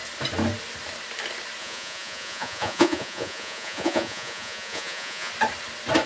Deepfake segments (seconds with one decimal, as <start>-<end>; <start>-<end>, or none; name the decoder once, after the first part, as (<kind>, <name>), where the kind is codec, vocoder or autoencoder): 1.6-5.3 (vocoder, Vocos)